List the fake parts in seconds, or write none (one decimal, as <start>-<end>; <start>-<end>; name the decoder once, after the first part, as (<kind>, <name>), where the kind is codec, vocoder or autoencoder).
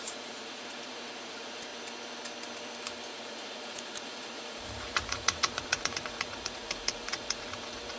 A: 0.0-1.7 (vocoder, Vocos); 3.1-8.0